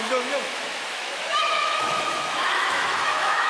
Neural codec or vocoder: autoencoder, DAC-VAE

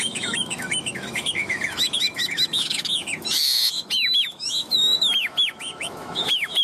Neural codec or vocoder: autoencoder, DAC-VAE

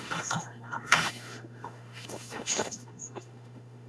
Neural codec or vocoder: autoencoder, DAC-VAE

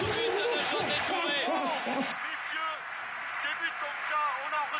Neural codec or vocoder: none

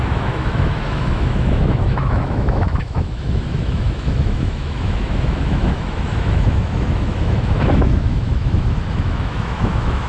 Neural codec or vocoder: autoencoder, DAC-VAE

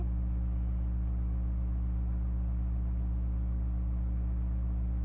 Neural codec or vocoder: none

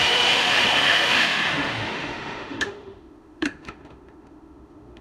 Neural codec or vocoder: autoencoder, DAC-VAE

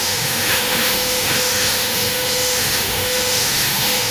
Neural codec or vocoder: autoencoder, DAC-VAE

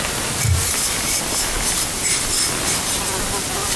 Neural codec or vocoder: none